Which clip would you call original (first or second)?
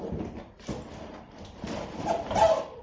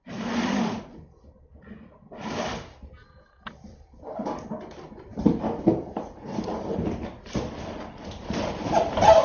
first